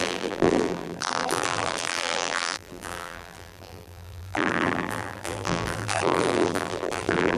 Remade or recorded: remade